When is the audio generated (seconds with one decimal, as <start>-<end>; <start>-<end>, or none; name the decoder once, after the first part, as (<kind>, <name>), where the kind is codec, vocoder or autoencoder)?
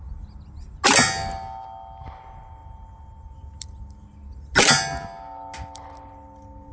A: none